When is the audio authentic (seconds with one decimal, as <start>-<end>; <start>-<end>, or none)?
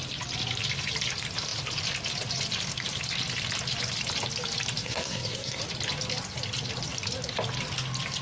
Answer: 0.0-4.8; 5.6-8.2